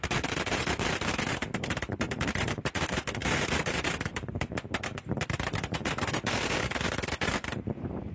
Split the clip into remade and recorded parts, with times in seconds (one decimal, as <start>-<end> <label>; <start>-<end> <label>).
0.0-8.1 remade